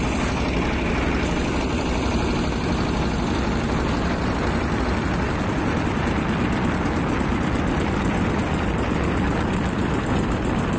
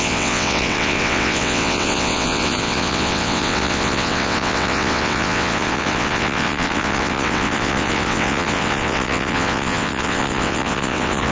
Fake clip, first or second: second